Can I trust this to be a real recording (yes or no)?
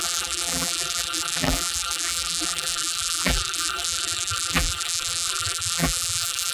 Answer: no